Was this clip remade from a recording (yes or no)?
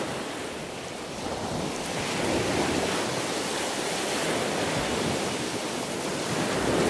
no